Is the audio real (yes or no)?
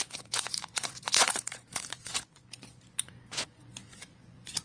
no